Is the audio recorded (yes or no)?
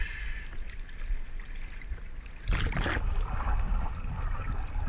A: yes